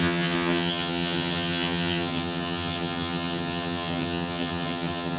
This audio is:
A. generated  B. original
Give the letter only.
A